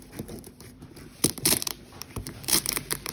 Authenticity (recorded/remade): remade